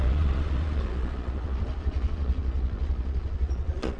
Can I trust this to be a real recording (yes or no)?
no